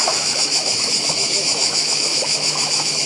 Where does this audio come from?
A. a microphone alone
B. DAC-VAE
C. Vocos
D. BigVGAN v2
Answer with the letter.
B